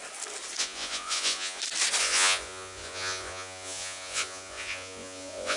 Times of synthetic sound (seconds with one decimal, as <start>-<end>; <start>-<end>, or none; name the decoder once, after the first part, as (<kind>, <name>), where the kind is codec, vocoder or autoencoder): 0.6-1.6 (vocoder, Vocos); 2.0-5.6